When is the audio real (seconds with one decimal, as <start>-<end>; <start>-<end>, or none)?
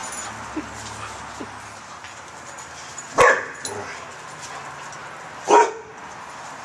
0.0-6.6